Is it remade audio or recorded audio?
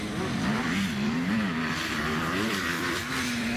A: remade